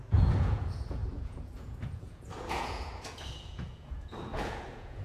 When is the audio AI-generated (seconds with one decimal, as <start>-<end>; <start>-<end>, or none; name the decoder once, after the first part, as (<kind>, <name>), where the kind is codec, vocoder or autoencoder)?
0.0-5.0 (vocoder, Vocos)